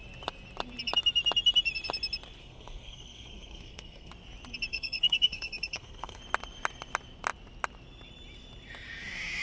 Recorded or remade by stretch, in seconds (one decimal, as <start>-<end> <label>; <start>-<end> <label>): 0.0-2.4 recorded; 2.4-4.1 remade; 4.1-4.7 recorded; 4.7-6.2 remade; 6.2-9.4 recorded